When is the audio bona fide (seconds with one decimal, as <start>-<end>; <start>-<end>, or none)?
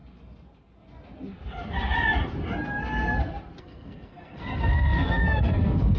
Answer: 0.0-3.6